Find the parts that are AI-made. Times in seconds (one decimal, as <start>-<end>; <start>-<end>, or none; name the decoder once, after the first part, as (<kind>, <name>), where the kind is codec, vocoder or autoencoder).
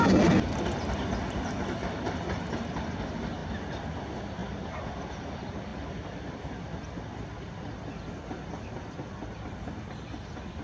3.4-4.0 (vocoder, BigVGAN v2); 4.4-5.2; 5.7-8.0